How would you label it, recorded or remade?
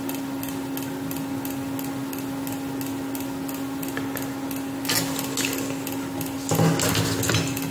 recorded